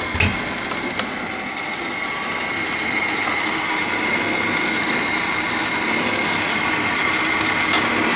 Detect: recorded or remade recorded